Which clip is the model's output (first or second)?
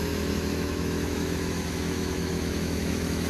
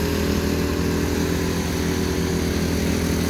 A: first